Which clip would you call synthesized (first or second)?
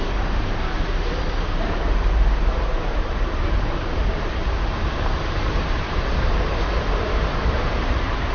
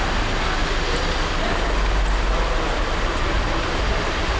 first